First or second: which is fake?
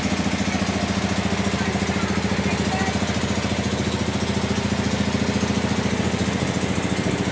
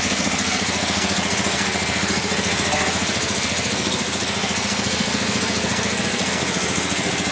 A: second